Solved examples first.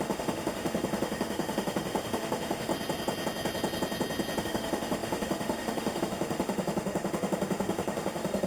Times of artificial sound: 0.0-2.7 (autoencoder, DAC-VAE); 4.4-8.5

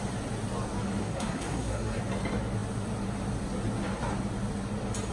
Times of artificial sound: 1.0-2.0 (codec, SNAC)